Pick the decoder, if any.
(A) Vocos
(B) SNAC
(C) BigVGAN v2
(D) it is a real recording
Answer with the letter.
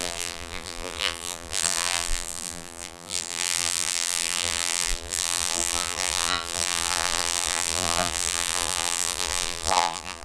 C